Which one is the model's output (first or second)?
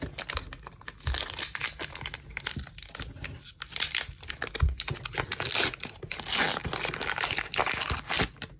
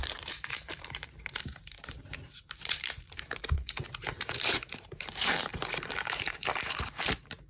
second